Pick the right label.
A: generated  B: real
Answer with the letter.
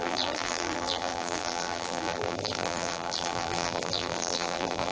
A